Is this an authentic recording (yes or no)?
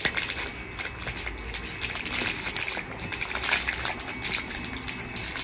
yes